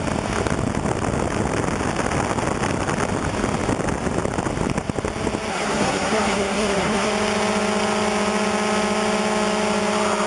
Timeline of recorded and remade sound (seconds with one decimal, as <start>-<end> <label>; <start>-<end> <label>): 0.0-5.5 recorded; 5.5-7.1 remade; 7.1-10.3 recorded